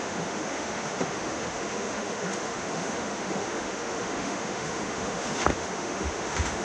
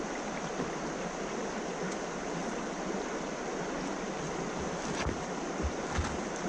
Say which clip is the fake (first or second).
first